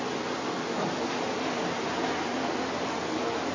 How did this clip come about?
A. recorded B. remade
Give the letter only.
A